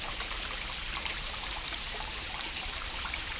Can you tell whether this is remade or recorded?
remade